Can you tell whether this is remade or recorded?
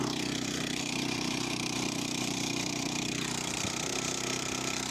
remade